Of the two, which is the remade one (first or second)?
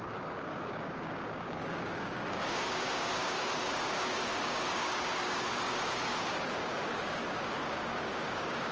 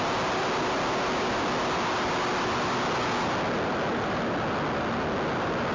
first